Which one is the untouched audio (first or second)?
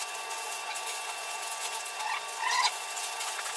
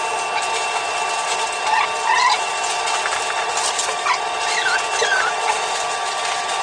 second